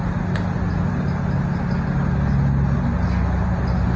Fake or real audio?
real